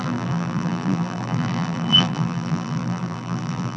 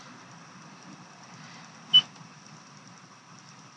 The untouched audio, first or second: second